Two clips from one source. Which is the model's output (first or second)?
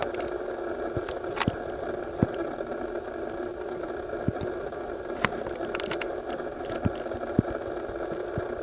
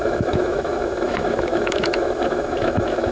second